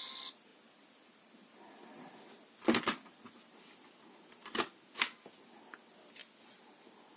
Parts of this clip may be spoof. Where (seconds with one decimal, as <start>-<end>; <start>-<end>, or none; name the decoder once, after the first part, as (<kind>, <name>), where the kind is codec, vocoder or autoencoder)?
none